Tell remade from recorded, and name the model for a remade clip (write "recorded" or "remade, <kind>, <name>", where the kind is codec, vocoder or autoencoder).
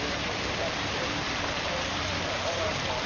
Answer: remade, vocoder, BigVGAN v2